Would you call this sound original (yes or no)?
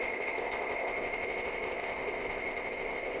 no